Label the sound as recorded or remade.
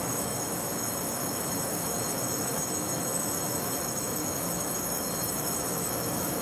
remade